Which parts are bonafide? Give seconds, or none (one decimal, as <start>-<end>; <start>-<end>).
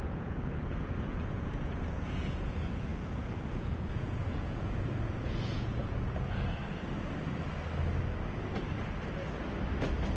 6.6-10.2